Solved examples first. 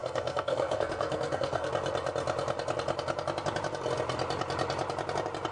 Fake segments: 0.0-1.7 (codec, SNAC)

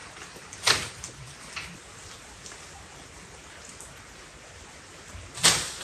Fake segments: none

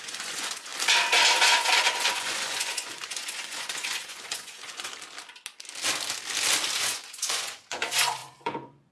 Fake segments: 0.0-0.7 (vocoder, Vocos); 1.4-4.9; 6.8-8.9

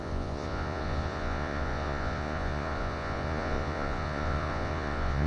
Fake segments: 0.0-5.3 (vocoder, Vocos)

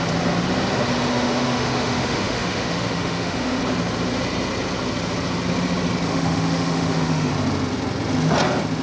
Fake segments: 1.1-3.6 (autoencoder, DAC-VAE); 6.1-7.3